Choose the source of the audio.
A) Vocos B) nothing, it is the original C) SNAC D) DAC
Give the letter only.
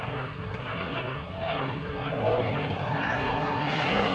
C